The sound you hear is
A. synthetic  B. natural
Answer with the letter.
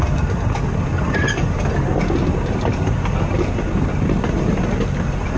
B